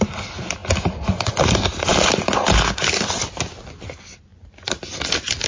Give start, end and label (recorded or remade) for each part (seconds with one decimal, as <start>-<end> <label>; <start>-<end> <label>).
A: 0.0-5.5 recorded